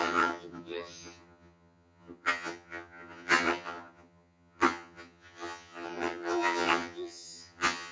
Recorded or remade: remade